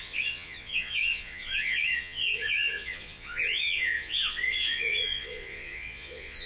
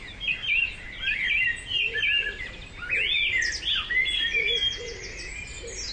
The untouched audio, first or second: second